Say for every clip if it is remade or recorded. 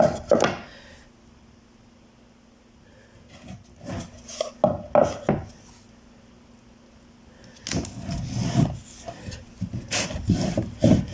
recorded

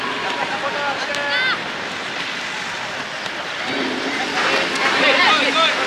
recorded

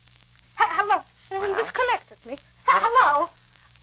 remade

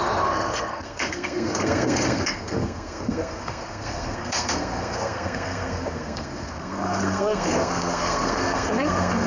remade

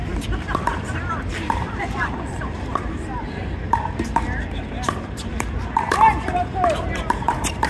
remade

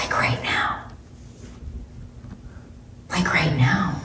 recorded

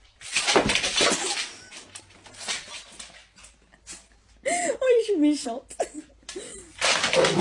recorded